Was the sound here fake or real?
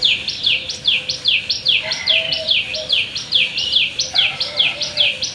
fake